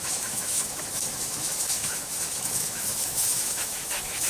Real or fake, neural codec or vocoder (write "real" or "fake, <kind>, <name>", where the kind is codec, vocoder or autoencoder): fake, autoencoder, DAC-VAE